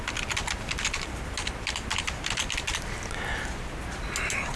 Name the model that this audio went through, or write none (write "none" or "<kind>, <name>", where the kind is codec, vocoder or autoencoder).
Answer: none